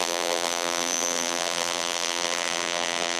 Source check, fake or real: fake